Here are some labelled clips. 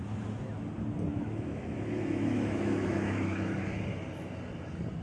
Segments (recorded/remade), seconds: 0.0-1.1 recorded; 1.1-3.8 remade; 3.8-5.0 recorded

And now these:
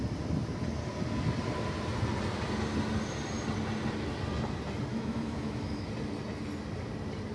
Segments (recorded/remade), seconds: 0.0-4.9 recorded; 4.9-5.9 remade; 5.9-7.3 recorded

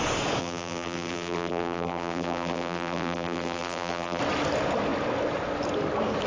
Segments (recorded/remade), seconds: 0.0-0.4 recorded; 0.4-4.2 remade; 4.2-6.3 recorded

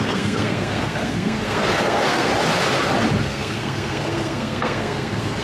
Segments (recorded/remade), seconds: 0.0-2.3 remade; 2.3-3.2 recorded; 3.2-5.4 remade

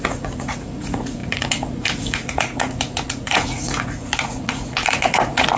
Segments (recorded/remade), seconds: 0.0-5.6 remade

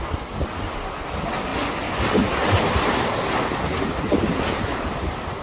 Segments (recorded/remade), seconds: 0.0-5.4 recorded